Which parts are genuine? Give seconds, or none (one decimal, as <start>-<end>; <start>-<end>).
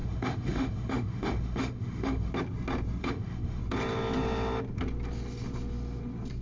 2.3-3.0; 3.6-6.4